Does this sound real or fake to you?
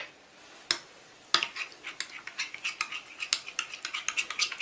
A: real